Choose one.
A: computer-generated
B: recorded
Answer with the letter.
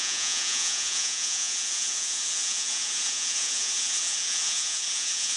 A